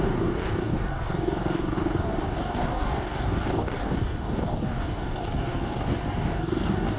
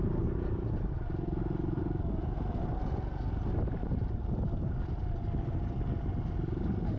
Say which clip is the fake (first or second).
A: first